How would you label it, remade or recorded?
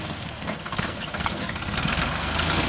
remade